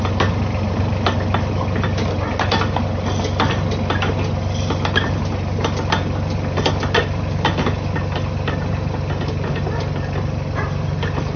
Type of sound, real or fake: real